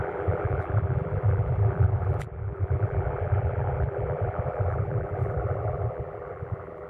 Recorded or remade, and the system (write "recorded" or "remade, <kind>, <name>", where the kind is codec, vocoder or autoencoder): remade, vocoder, BigVGAN v2